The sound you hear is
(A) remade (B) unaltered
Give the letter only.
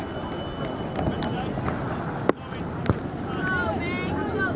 B